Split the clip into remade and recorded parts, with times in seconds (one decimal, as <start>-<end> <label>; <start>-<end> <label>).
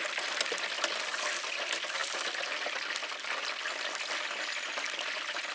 0.0-5.5 recorded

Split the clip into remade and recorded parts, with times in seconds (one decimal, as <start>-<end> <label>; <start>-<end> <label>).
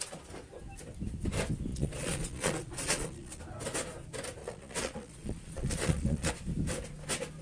0.0-1.7 recorded; 1.7-3.4 remade; 3.4-4.4 recorded; 4.4-6.3 remade; 6.3-7.4 recorded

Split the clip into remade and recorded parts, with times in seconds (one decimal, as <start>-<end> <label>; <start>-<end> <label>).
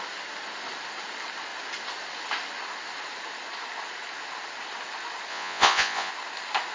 0.0-5.3 recorded; 5.3-6.1 remade; 6.1-6.7 recorded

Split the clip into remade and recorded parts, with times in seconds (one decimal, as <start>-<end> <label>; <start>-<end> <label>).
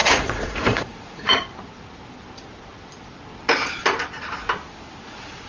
0.0-1.4 remade; 1.4-5.5 recorded